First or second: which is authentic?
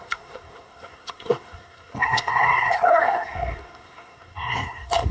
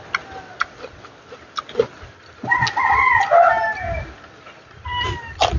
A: second